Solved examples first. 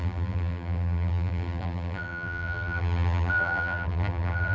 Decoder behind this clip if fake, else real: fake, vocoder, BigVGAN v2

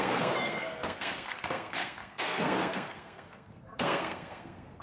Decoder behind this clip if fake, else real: fake, codec, SNAC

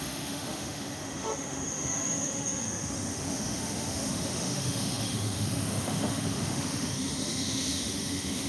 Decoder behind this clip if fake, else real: fake, autoencoder, DAC-VAE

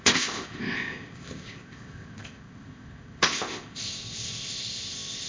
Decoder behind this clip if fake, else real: fake, codec, ZipCodec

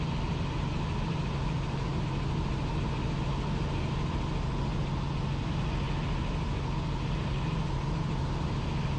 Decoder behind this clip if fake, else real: real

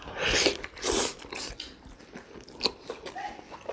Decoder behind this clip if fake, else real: real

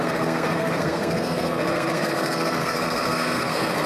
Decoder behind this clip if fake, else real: fake, codec, SNAC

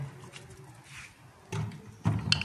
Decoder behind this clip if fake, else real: real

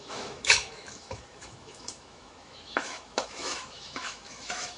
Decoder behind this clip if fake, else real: fake, autoencoder, DAC-VAE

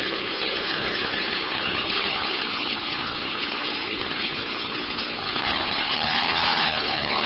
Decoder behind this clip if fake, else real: fake, codec, HILCodec